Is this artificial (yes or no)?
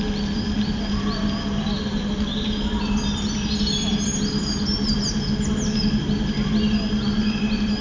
no